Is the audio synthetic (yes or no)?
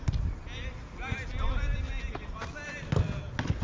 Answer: no